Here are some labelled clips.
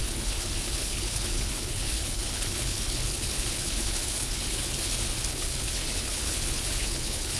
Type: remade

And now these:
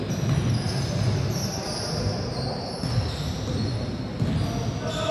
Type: recorded